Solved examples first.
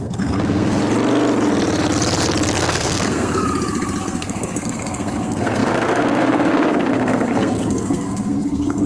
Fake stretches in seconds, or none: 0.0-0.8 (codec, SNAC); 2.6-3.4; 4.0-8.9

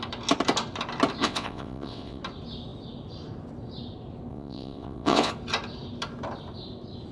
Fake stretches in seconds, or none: 1.2-2.2 (vocoder, WaveNeXt); 4.3-5.3

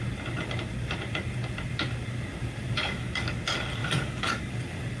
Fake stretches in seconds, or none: 2.8-3.4 (codec, DAC); 3.8-4.5

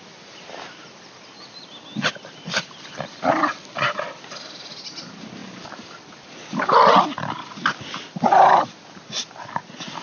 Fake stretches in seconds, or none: none